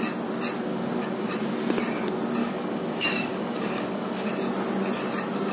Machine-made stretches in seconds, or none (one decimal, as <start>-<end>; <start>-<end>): 0.7-1.3; 2.4-4.3